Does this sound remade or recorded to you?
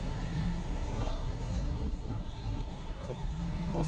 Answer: remade